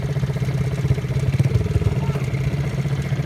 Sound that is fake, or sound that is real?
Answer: real